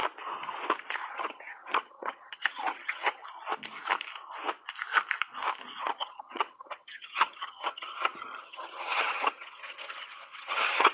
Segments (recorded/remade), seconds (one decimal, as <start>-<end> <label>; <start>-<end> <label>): 0.0-1.1 recorded; 1.1-3.2 remade; 3.2-5.8 recorded; 5.8-10.9 remade